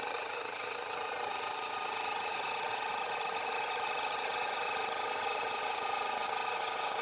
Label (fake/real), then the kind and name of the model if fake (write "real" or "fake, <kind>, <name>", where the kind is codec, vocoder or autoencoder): fake, vocoder, HiFi-GAN